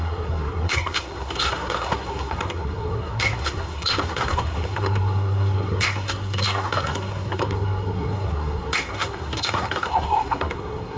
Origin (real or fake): fake